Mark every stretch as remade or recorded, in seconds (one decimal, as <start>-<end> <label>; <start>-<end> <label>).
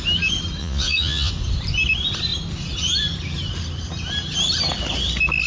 0.0-0.6 recorded; 0.6-1.3 remade; 1.3-5.5 recorded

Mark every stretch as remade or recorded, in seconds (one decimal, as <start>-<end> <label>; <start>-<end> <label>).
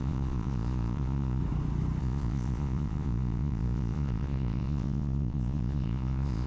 0.0-1.4 remade; 1.4-2.0 recorded; 2.0-6.5 remade